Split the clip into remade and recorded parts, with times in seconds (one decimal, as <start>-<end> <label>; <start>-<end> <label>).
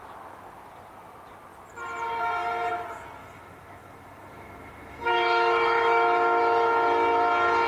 0.0-3.2 recorded; 3.2-6.4 remade; 6.4-7.7 recorded